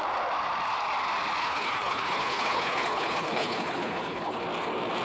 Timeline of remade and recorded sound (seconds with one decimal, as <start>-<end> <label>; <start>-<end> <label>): 0.0-1.4 recorded; 1.4-4.4 remade; 4.4-5.0 recorded